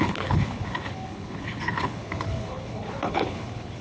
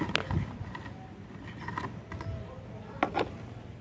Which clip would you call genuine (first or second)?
second